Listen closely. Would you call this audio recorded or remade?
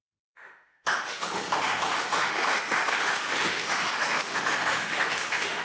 remade